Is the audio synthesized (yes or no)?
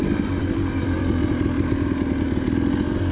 no